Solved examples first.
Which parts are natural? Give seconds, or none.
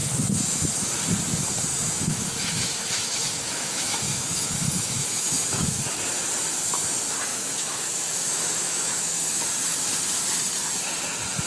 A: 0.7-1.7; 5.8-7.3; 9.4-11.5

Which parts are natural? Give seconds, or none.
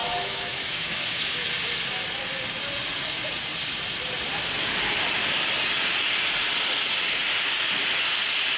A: 1.5-8.6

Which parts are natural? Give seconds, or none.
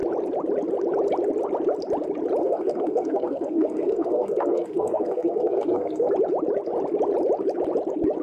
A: 0.0-2.4; 6.1-8.2